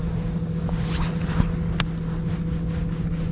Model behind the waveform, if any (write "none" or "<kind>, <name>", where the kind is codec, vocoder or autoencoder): none